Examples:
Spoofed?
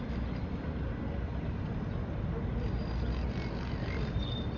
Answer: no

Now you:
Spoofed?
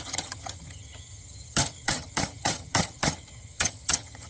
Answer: yes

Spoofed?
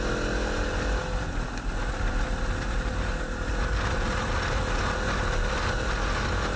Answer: no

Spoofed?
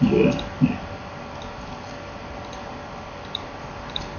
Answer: no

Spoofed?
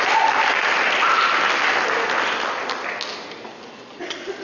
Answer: no